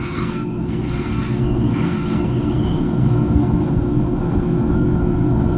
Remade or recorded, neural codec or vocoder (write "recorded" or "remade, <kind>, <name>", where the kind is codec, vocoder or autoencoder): remade, codec, SNAC